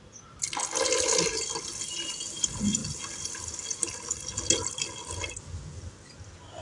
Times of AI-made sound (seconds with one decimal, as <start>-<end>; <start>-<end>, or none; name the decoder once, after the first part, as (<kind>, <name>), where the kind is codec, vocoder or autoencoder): none